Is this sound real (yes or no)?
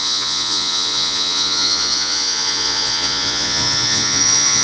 no